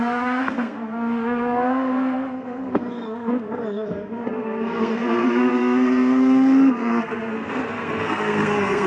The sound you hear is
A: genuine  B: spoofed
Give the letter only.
B